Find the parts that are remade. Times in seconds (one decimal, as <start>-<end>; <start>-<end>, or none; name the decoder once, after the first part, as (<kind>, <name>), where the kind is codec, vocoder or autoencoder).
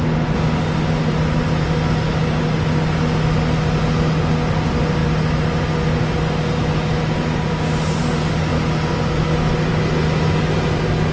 none